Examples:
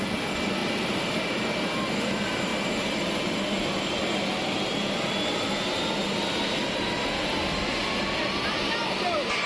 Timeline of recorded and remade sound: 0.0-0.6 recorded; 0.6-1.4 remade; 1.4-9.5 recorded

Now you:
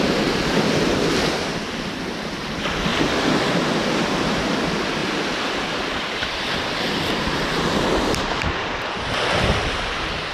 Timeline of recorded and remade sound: 0.0-5.0 recorded; 5.0-8.4 remade; 8.4-10.3 recorded